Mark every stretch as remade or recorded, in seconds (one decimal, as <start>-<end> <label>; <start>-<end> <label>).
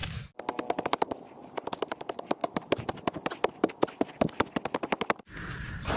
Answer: 0.0-6.0 recorded